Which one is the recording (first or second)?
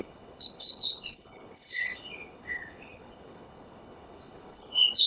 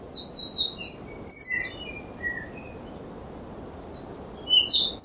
second